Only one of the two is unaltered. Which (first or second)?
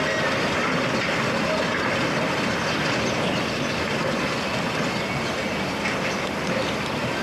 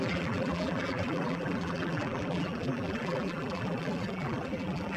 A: first